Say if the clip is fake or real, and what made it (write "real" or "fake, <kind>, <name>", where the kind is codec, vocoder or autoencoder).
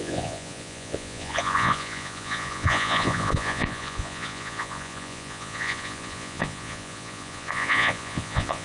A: fake, vocoder, Vocos